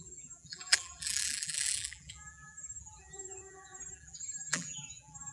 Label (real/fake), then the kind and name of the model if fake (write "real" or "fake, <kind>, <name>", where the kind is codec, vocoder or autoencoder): fake, vocoder, BigVGAN v2